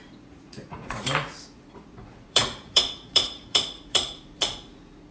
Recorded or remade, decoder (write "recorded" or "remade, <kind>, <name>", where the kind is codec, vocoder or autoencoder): remade, vocoder, Vocos